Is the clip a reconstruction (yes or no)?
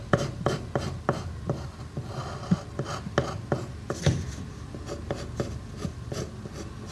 no